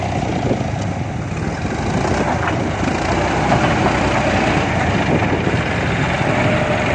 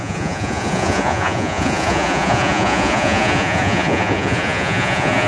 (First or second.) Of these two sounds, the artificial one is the second